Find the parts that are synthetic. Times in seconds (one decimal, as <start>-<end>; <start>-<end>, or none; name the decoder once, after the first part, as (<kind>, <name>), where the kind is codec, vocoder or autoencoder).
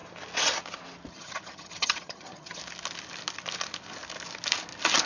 1.1-2.6 (vocoder, HiFi-GAN)